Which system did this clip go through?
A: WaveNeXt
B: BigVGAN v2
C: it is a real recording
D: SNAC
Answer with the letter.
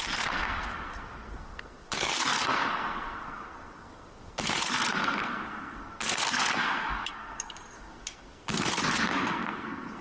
D